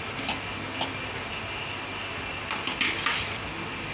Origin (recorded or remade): recorded